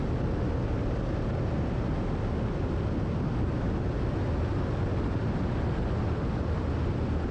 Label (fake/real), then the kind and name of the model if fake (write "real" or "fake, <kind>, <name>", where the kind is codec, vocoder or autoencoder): real